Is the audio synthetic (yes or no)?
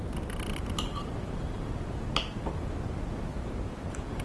yes